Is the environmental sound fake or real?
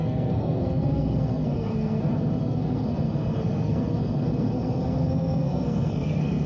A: fake